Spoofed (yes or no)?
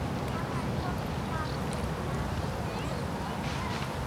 no